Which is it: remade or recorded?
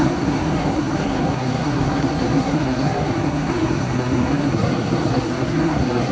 remade